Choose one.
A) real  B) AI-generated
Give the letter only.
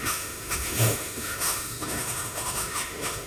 B